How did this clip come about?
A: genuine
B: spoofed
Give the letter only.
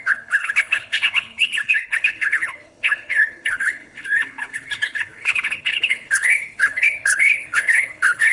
B